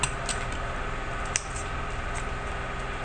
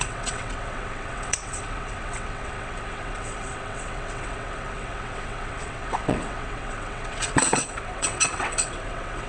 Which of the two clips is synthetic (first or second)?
second